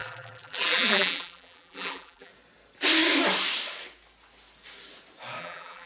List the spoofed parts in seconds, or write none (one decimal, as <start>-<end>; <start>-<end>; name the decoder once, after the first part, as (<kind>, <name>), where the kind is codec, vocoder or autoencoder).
0.0-2.3 (vocoder, BigVGAN v2); 5.4-5.9